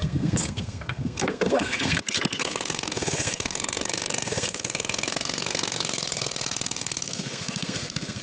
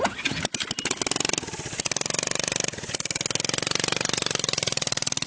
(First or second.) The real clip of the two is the second